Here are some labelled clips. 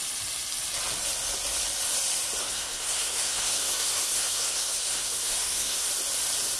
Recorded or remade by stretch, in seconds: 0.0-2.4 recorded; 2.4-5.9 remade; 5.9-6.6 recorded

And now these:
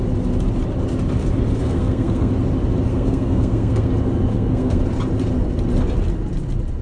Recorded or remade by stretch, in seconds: 0.0-1.6 recorded; 1.6-2.3 remade; 2.3-2.9 recorded; 2.9-3.9 remade; 3.9-4.3 recorded; 4.3-4.8 remade; 4.8-6.8 recorded

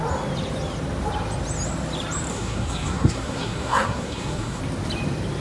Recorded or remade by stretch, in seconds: 0.0-2.3 recorded; 2.3-4.6 remade; 4.6-5.4 recorded